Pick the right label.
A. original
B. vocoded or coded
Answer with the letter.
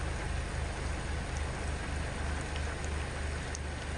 A